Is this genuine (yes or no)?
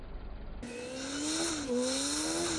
yes